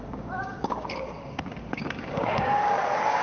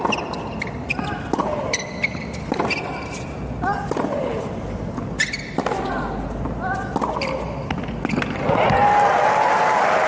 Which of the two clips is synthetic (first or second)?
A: first